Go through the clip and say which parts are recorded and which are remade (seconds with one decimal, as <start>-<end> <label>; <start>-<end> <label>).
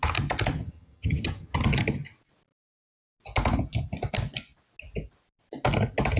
0.0-0.5 recorded; 0.5-1.6 remade; 1.6-6.2 recorded